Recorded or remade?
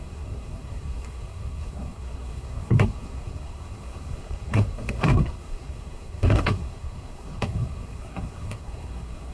remade